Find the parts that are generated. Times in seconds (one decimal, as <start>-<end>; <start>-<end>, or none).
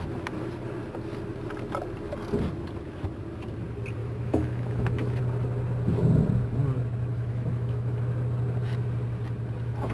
4.0-5.2; 7.1-8.0